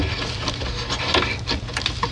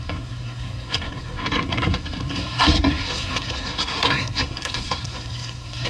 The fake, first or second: second